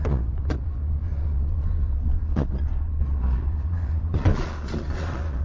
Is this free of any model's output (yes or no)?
no